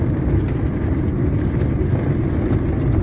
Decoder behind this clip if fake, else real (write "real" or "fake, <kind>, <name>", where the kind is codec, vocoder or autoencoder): real